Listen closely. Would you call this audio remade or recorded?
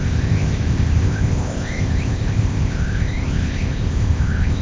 remade